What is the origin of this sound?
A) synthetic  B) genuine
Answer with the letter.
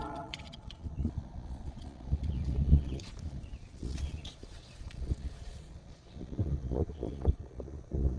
A